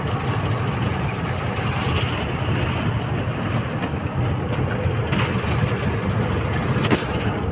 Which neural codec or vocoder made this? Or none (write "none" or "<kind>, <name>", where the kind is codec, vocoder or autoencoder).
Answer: none